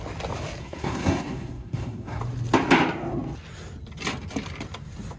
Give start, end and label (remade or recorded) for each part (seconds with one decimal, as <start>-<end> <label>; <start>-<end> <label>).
0.0-0.6 recorded; 0.6-2.2 remade; 2.2-5.2 recorded